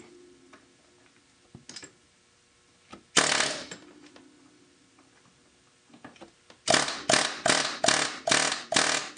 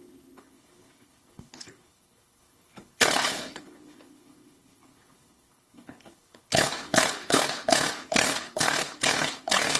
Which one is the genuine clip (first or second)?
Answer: first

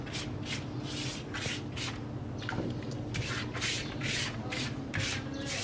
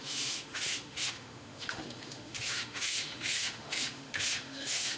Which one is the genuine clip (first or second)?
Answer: first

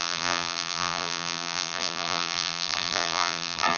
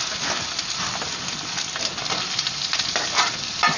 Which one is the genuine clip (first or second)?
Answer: second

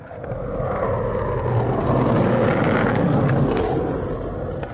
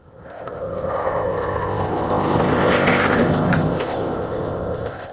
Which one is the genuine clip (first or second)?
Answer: first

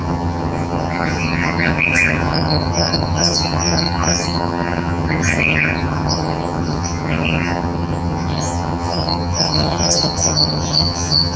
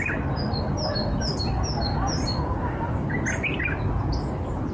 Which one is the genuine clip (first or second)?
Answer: second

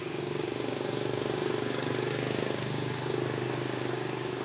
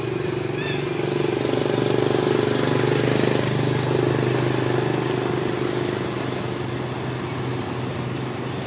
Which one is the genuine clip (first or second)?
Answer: second